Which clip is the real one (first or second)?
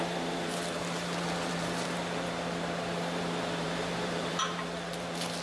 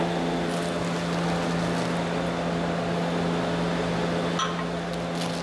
second